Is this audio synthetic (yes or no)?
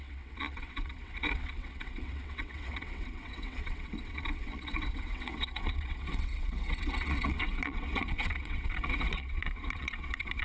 yes